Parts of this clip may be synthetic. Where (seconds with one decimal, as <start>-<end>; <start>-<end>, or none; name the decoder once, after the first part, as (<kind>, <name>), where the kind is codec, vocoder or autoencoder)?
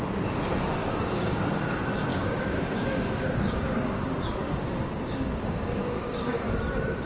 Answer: 0.8-1.5 (codec, DAC); 2.1-6.4